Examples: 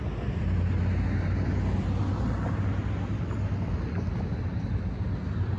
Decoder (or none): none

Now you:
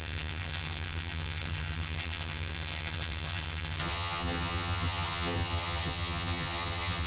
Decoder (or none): vocoder, HiFi-GAN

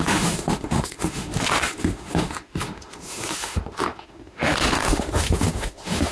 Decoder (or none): autoencoder, DAC-VAE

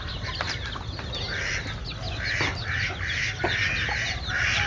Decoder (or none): none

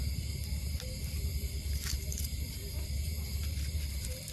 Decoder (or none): vocoder, BigVGAN v2